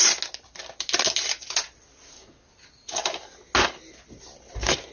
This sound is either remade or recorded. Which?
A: recorded